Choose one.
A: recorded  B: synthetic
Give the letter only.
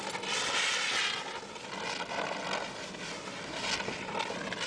A